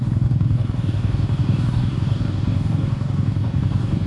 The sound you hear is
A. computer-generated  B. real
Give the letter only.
A